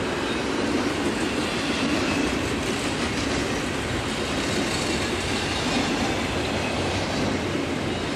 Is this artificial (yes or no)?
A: no